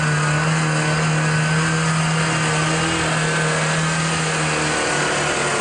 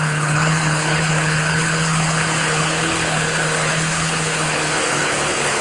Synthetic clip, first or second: second